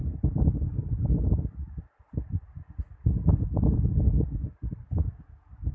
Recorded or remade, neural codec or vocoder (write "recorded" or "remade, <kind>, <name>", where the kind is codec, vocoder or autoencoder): recorded